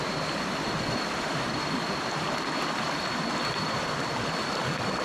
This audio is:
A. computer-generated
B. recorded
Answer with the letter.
B